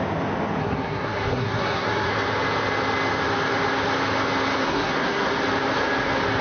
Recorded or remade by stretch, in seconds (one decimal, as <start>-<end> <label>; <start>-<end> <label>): 0.0-0.6 recorded; 0.6-2.1 remade; 2.1-4.6 recorded; 4.6-5.3 remade; 5.3-6.4 recorded